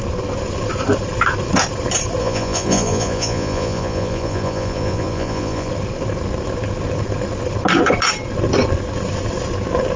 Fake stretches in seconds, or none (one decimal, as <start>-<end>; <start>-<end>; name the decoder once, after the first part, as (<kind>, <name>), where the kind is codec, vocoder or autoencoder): 2.2-5.7 (vocoder, Vocos)